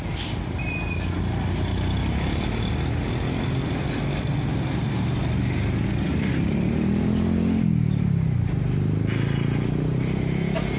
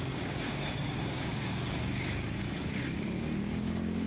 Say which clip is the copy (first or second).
second